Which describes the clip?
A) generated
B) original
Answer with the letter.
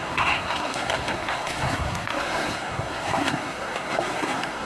A